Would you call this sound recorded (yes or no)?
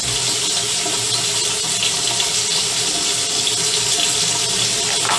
yes